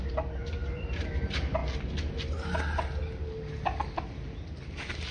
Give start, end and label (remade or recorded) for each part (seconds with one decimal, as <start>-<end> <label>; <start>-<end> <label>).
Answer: 0.0-0.6 recorded; 0.6-1.1 remade; 1.1-5.1 recorded